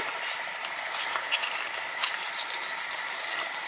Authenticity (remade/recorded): recorded